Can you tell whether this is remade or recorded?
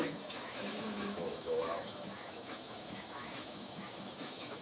remade